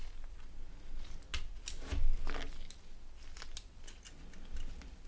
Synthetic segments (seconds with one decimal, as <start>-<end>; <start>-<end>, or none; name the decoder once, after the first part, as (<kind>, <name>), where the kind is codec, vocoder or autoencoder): none